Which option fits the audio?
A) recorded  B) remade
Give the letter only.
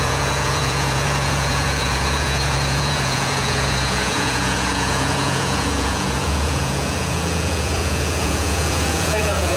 B